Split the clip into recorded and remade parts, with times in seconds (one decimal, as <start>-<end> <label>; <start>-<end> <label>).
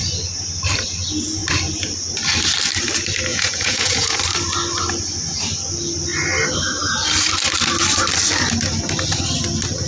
0.0-3.3 recorded; 3.3-4.2 remade; 4.2-9.9 recorded